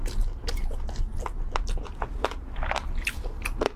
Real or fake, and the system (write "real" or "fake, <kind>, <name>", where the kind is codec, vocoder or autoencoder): real